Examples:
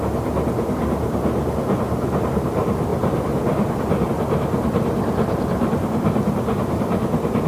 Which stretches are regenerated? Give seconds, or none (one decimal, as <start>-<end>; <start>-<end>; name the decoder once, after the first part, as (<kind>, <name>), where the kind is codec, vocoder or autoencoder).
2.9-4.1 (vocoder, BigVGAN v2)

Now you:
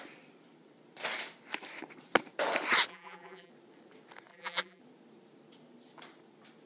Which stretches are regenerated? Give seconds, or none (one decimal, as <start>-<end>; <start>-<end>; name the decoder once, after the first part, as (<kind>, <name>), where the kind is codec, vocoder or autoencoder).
2.9-3.5 (vocoder, BigVGAN v2); 4.3-4.8

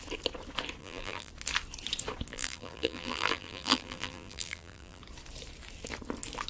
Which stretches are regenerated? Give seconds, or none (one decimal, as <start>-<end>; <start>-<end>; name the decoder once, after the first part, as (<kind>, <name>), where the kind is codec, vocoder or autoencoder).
0.8-1.3 (vocoder, BigVGAN v2); 2.3-5.0